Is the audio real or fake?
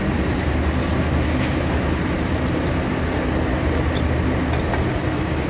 real